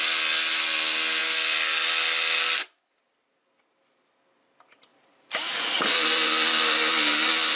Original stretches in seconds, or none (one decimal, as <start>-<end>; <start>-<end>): 0.0-7.6